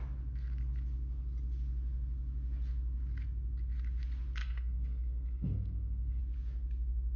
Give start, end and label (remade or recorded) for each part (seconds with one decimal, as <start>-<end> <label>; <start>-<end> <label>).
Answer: 0.0-4.4 recorded; 4.4-6.2 remade; 6.2-7.2 recorded

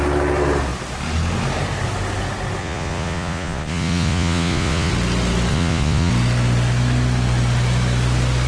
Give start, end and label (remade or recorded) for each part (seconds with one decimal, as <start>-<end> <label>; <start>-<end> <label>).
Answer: 0.0-2.6 recorded; 2.6-4.9 remade; 4.9-5.5 recorded; 5.5-6.1 remade; 6.1-8.5 recorded

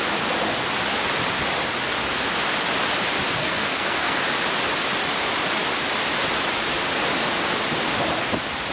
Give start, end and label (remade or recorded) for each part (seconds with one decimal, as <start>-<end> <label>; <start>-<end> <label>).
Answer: 0.0-3.4 recorded; 3.4-4.2 remade; 4.2-8.7 recorded

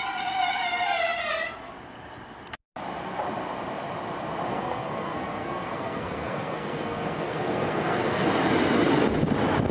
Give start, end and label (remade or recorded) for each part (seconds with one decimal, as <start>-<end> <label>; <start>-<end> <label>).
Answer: 0.0-4.5 recorded; 4.5-8.3 remade; 8.3-9.7 recorded

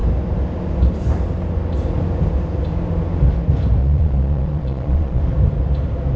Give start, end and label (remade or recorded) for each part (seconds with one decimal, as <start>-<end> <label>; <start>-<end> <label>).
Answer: 0.0-3.8 recorded; 3.8-5.2 remade; 5.2-6.2 recorded

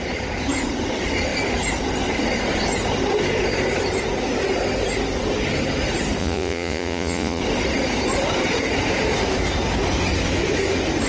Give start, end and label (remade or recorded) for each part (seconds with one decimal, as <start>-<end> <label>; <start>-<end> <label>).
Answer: 0.0-6.2 recorded; 6.2-7.4 remade; 7.4-11.1 recorded

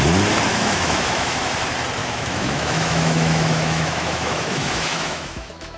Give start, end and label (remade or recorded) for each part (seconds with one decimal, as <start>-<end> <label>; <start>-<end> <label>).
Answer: 0.0-0.5 recorded; 0.5-1.5 remade; 1.5-2.0 recorded; 2.0-5.8 remade